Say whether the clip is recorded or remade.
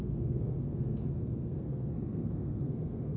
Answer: remade